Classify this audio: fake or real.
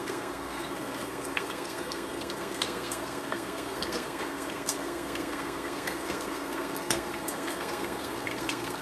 fake